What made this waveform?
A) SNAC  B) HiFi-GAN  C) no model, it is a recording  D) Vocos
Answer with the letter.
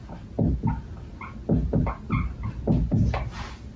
C